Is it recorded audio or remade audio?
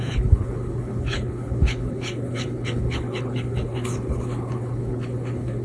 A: remade